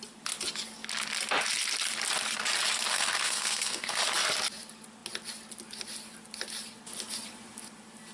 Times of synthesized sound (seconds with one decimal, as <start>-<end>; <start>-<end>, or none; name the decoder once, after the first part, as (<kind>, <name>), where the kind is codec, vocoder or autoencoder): 2.9-4.0 (codec, SNAC)